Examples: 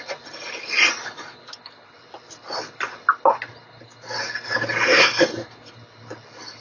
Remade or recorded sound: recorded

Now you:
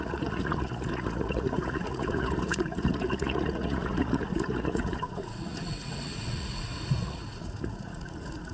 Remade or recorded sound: remade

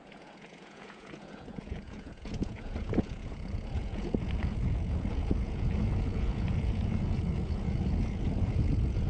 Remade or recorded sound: remade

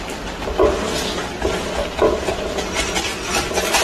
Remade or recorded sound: recorded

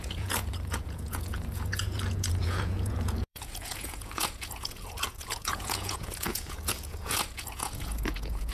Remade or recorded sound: remade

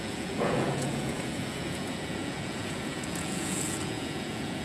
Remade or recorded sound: remade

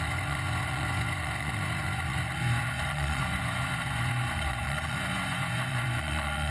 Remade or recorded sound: remade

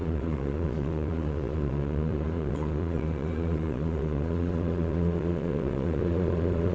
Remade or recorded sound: remade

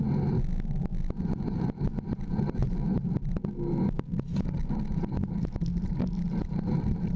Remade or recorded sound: recorded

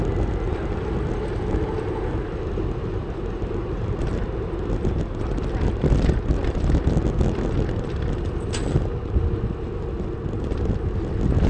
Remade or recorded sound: recorded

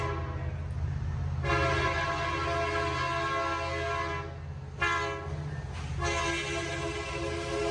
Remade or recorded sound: recorded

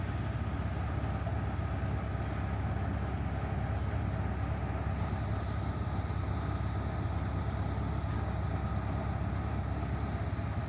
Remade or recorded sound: recorded